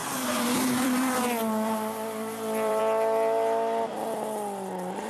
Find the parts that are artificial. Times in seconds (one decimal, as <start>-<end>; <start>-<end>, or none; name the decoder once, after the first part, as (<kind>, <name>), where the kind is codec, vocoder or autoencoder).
0.0-2.8 (vocoder, BigVGAN v2)